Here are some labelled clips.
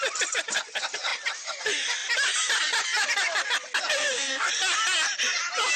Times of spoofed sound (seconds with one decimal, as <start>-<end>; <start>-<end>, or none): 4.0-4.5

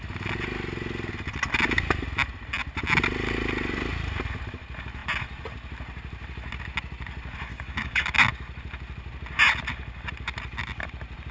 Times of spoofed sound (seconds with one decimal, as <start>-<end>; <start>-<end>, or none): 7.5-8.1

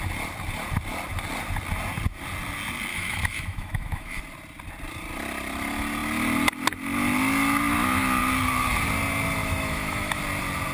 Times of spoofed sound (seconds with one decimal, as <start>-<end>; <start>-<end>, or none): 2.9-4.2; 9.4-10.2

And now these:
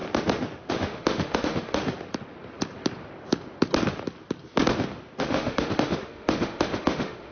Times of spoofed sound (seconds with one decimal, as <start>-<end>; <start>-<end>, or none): 0.7-1.8; 5.2-7.3